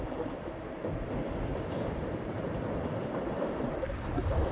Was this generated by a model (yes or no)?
no